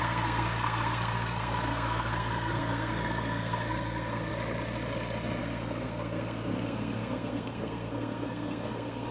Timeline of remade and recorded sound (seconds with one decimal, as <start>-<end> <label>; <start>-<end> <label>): 0.0-4.3 remade; 4.3-5.4 recorded; 5.4-9.1 remade